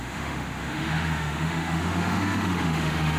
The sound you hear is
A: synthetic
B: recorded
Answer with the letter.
A